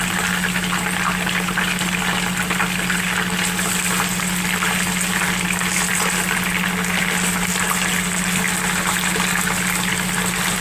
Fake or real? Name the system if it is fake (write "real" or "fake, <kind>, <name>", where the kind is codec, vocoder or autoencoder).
real